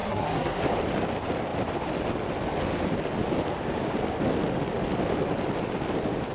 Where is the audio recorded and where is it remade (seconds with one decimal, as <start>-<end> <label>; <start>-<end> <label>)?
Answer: 0.0-0.6 remade; 0.6-6.3 recorded